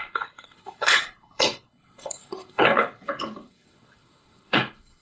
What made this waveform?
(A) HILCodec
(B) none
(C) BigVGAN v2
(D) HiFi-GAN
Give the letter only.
A